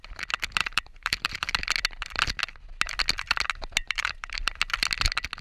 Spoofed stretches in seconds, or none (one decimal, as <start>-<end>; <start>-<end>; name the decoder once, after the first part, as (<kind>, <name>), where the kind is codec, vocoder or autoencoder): 0.6-1.5 (vocoder, BigVGAN v2); 3.8-4.4